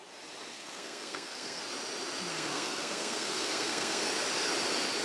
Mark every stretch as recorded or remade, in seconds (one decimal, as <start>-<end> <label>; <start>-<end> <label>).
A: 0.0-0.5 recorded; 0.5-1.6 remade; 1.6-2.3 recorded; 2.3-4.1 remade; 4.1-5.0 recorded